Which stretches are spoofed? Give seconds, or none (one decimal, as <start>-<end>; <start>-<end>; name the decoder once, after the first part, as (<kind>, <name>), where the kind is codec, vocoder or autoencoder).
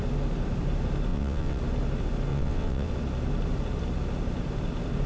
1.1-1.6 (vocoder, WaveNeXt); 2.3-2.9